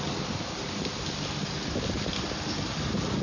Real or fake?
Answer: real